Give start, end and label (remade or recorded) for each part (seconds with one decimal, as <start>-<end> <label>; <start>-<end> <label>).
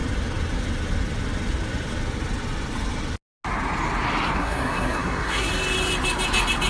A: 0.0-4.4 recorded; 4.4-5.5 remade; 5.5-6.7 recorded